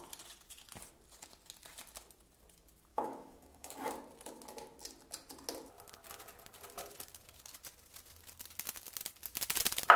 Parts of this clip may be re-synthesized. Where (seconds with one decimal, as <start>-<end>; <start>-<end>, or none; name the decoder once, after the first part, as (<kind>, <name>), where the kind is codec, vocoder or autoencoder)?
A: 2.9-3.9 (codec, DAC)